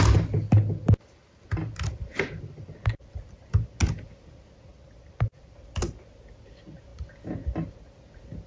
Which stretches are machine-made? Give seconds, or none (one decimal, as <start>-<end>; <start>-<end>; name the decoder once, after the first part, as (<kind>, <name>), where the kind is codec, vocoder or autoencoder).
2.1-3.5 (vocoder, BigVGAN v2); 4.7-5.8